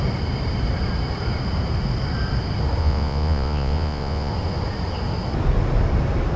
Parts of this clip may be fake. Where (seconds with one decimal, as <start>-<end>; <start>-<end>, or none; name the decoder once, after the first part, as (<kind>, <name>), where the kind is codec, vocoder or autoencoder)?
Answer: 2.8-4.3 (vocoder, Vocos)